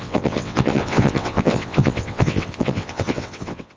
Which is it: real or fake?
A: fake